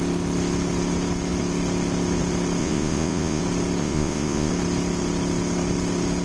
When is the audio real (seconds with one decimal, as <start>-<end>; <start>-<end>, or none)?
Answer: 0.0-2.6; 3.4-3.8; 4.5-6.2